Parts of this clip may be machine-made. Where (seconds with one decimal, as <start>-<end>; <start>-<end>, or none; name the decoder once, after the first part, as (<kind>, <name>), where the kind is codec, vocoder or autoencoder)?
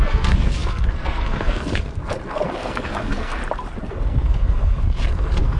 0.0-3.4 (codec, SNAC); 3.9-5.6